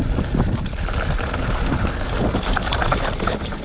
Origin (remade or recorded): recorded